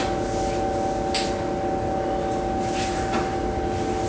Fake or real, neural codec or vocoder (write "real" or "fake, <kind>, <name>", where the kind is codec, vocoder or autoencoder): real